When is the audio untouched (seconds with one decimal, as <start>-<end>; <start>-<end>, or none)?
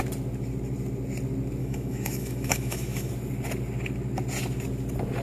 0.0-1.6; 3.1-5.2